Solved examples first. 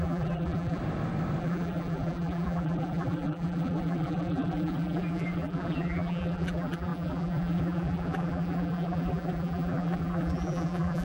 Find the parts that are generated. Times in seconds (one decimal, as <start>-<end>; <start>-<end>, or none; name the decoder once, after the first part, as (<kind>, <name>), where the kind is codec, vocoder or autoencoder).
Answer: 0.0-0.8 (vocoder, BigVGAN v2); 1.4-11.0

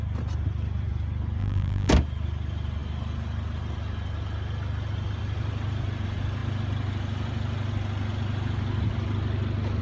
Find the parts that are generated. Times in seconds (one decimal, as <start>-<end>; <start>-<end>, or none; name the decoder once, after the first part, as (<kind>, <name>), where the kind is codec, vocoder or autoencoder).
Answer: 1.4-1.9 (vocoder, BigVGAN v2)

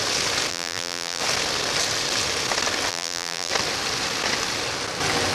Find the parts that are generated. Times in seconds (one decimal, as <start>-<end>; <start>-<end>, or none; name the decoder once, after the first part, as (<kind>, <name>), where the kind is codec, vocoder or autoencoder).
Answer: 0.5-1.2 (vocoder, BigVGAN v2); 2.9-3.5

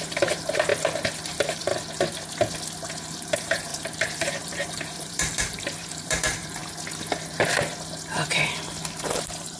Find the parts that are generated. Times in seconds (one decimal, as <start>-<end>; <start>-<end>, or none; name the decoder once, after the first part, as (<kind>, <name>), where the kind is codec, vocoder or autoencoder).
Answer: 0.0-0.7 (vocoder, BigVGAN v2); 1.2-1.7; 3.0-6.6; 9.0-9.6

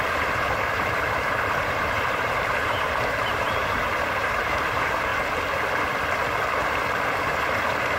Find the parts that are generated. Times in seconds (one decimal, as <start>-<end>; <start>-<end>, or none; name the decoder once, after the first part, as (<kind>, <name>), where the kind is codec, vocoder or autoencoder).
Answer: 0.0-5.1 (vocoder, BigVGAN v2); 6.9-8.0